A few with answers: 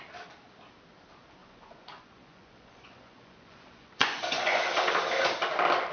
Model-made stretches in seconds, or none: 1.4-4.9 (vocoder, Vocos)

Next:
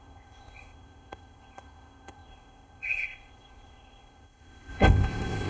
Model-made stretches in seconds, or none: 0.0-5.5 (codec, ZipCodec)

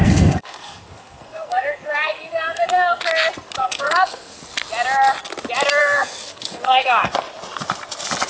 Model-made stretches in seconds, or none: 0.0-3.0 (codec, SNAC); 3.6-4.4; 5.8-7.1

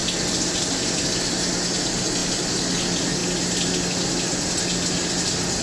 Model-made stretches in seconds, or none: none